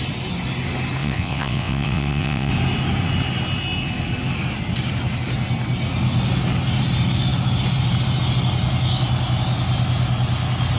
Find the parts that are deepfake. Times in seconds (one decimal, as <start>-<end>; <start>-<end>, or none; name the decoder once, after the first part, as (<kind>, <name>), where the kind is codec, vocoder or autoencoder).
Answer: 1.0-2.5 (vocoder, WaveNeXt)